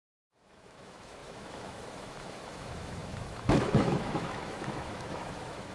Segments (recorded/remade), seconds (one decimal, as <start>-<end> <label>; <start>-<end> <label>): 0.0-5.7 remade